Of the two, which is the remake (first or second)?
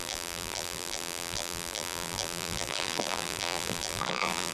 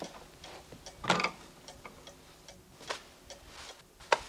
first